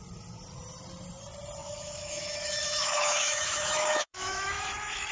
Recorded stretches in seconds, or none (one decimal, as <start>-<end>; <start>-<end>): 0.0-1.6